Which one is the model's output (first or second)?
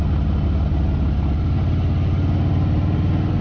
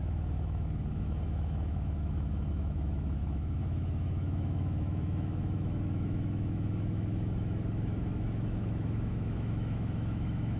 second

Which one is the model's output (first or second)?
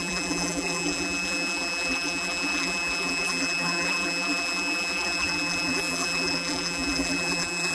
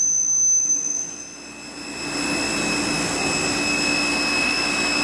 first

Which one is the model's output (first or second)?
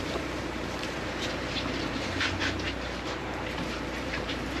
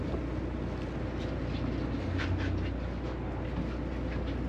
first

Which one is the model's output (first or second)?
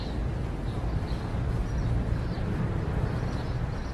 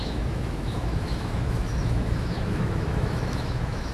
second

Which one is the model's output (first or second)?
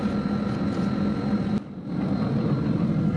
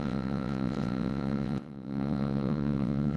second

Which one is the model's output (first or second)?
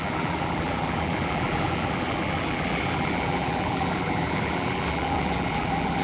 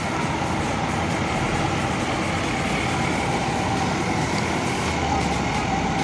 first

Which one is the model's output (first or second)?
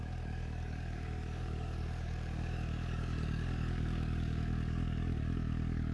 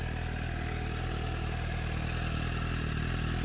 first